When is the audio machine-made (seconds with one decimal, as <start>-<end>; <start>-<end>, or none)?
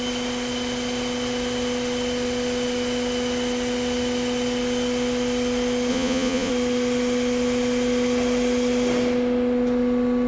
5.9-6.5